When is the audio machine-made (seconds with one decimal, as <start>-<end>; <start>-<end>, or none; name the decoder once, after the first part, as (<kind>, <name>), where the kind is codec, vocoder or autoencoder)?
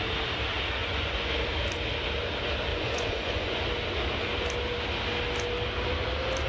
0.8-1.3 (vocoder, Vocos); 2.7-3.6